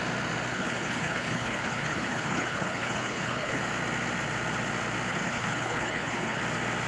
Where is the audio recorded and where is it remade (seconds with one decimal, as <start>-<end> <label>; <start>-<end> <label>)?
0.0-0.5 recorded; 0.5-3.6 remade; 3.6-5.1 recorded; 5.1-6.4 remade; 6.4-6.9 recorded